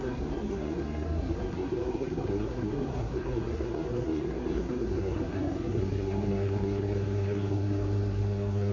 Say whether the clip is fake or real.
fake